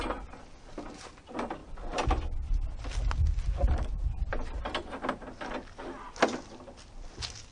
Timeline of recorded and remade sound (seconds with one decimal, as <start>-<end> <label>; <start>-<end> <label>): 0.0-7.5 recorded